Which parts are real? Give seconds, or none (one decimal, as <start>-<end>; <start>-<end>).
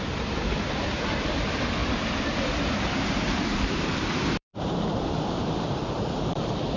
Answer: 5.8-6.3